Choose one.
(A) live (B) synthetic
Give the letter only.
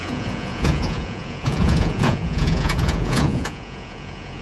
B